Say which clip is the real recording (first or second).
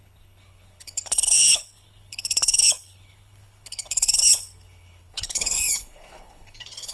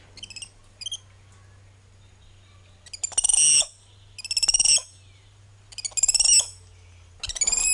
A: second